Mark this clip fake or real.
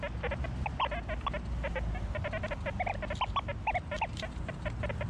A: real